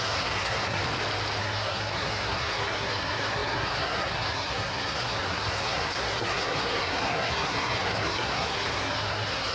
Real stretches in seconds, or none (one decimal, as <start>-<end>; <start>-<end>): 0.8-1.4